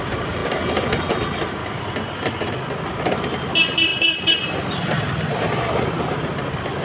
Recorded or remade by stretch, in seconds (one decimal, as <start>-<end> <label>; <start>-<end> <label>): 0.0-1.6 recorded; 1.6-2.6 remade; 2.6-3.9 recorded; 3.9-5.3 remade; 5.3-6.8 recorded